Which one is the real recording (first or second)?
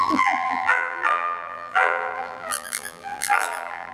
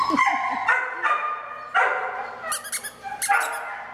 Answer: second